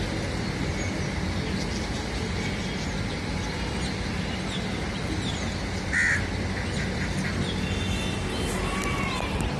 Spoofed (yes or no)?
no